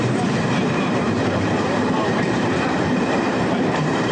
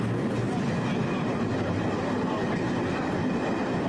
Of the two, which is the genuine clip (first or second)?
second